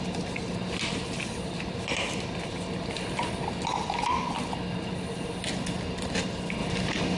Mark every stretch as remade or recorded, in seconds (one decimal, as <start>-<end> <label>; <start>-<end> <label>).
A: 0.0-7.2 recorded